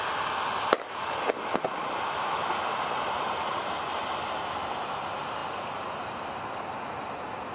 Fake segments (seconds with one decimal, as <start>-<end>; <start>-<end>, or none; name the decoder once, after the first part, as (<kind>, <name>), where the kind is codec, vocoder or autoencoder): 1.8-2.5 (autoencoder, DAC-VAE)